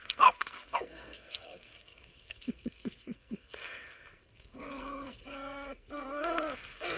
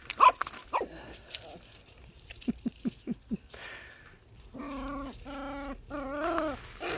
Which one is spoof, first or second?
first